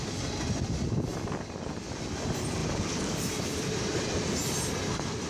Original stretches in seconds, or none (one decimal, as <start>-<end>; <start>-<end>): 0.0-1.1; 2.0-2.6